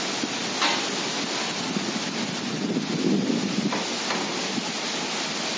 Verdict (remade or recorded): recorded